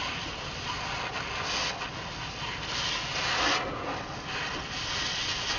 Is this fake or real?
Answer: real